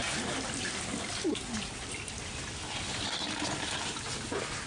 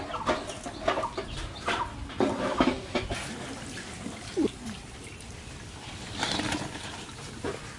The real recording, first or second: first